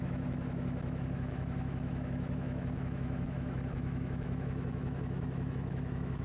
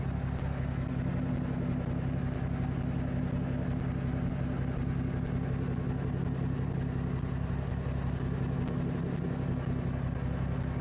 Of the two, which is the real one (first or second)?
second